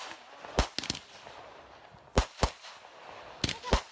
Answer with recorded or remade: recorded